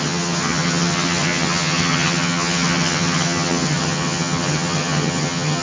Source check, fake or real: fake